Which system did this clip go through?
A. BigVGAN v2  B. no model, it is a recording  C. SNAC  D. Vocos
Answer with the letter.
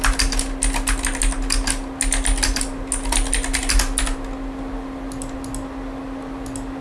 B